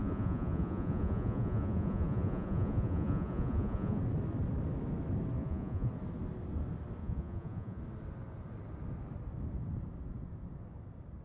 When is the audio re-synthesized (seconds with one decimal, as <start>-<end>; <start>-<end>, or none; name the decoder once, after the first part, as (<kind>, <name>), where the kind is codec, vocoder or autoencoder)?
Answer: 0.0-4.0 (vocoder, Vocos); 5.4-5.9; 7.0-7.8